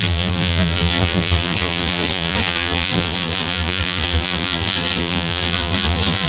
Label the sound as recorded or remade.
remade